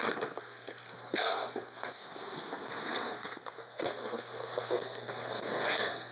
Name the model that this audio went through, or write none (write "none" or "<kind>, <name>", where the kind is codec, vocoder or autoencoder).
codec, SNAC